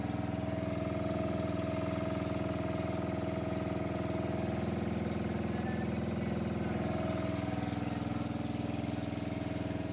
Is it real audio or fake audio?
real